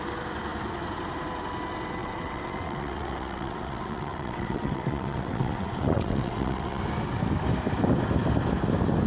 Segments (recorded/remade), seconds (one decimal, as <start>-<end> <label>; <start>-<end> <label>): 0.0-2.0 recorded; 2.0-6.8 remade; 6.8-9.1 recorded